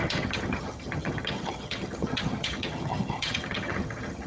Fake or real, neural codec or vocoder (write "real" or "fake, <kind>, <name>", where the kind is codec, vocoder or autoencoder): fake, vocoder, HiFi-GAN